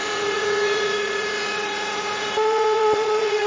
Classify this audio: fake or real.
fake